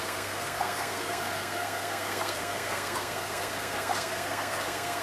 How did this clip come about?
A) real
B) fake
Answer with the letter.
B